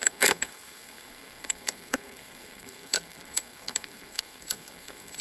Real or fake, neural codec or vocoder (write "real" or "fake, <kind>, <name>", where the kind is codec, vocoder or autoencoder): fake, codec, SNAC